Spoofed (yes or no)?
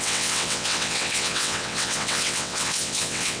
yes